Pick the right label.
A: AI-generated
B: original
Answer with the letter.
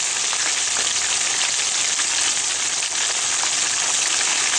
B